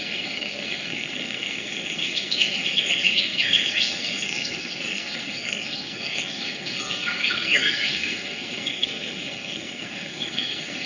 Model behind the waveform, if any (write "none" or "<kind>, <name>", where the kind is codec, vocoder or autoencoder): codec, SNAC